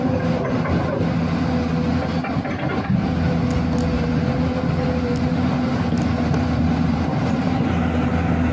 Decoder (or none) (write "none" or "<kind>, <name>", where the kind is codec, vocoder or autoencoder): none